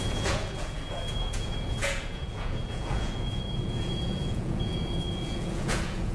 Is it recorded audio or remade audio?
remade